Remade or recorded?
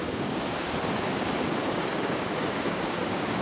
remade